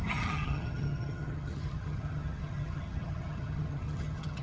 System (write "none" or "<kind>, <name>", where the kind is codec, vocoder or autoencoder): vocoder, HiFi-GAN